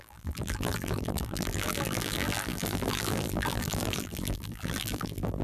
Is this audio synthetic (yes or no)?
yes